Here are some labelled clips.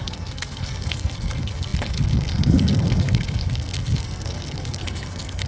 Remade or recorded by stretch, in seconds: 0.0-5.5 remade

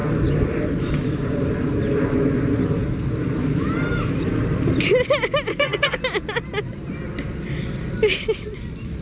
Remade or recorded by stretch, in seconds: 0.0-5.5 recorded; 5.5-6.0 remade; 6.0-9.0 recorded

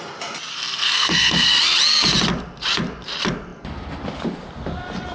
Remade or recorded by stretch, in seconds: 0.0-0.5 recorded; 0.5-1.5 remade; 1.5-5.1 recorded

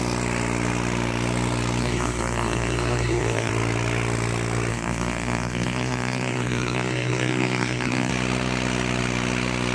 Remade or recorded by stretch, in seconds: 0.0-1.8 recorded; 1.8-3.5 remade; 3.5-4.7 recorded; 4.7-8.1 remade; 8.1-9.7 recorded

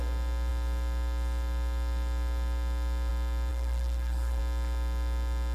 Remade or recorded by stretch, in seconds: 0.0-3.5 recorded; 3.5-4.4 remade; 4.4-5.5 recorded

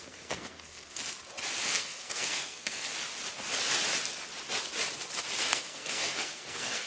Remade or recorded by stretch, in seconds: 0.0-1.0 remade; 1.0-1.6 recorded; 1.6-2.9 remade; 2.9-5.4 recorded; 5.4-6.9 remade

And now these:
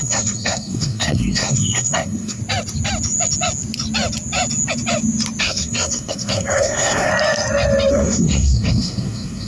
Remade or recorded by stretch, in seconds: 0.0-2.4 remade; 2.4-5.4 recorded; 5.4-7.1 remade; 7.1-7.9 recorded; 7.9-9.5 remade